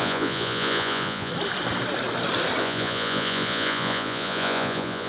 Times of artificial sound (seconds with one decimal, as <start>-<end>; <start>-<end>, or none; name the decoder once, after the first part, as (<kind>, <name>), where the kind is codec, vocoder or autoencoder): 0.0-1.3 (vocoder, Vocos); 2.6-5.1